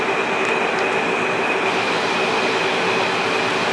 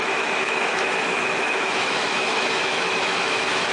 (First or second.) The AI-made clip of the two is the second